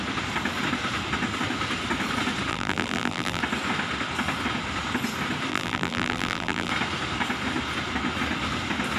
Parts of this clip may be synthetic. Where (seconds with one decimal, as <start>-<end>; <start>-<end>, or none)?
2.5-3.4; 5.5-6.7

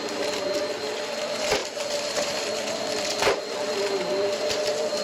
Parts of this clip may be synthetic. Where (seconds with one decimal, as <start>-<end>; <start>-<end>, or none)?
0.0-5.0

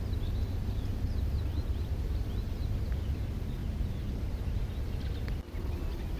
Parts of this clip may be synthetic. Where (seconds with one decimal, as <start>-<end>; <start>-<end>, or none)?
0.9-2.6; 3.6-4.6

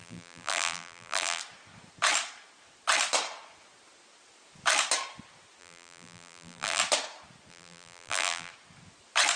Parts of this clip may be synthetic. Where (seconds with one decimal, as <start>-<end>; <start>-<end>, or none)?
0.0-1.4; 5.6-6.8; 7.5-8.5

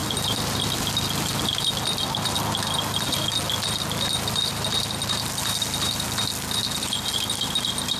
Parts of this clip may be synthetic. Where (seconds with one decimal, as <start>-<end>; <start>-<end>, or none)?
0.0-0.7

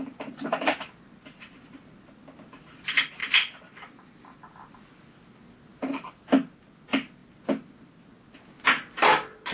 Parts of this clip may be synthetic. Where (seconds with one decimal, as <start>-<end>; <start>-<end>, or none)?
5.7-6.3

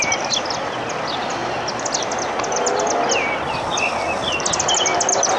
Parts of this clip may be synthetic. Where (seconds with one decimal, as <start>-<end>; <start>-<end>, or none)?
none